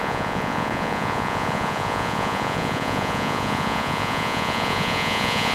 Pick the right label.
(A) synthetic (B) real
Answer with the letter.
A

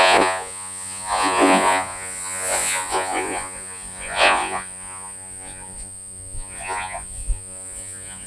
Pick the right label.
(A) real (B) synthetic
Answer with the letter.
B